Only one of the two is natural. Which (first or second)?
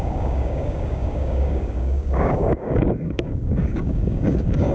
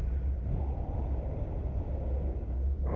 second